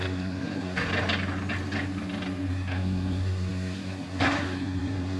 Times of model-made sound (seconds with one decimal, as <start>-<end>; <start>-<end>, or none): 0.0-0.9; 2.5-5.2